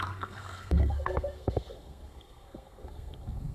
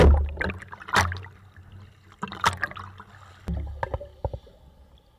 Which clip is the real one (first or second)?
second